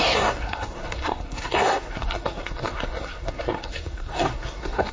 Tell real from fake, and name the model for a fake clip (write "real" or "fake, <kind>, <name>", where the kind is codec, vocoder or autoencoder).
fake, codec, SNAC